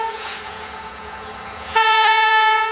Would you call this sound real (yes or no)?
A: no